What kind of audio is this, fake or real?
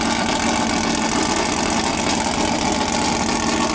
real